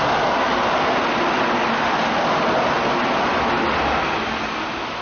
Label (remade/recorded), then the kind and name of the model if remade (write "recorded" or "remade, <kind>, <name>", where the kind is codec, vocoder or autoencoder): recorded